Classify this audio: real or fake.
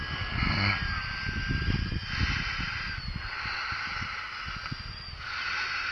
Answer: real